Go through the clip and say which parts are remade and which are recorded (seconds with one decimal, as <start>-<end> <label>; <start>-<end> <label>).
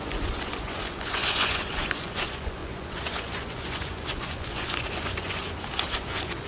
0.0-6.5 remade